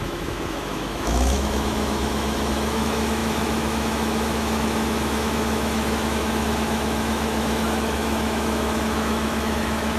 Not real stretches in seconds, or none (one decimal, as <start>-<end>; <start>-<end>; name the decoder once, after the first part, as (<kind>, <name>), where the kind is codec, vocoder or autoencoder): 0.0-10.0 (autoencoder, DAC-VAE)